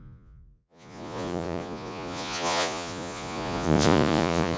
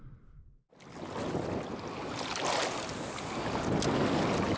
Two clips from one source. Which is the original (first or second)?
second